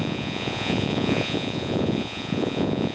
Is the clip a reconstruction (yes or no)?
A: yes